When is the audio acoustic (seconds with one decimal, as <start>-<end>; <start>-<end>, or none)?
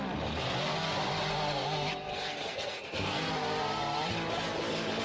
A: 0.0-2.1; 3.3-5.0